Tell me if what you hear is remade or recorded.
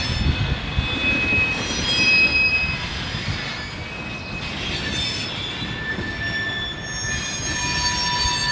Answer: recorded